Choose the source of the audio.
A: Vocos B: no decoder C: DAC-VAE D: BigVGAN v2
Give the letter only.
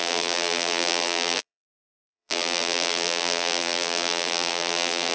D